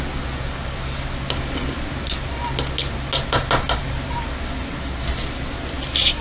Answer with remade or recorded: recorded